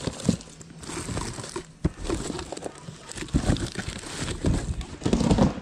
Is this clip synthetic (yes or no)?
no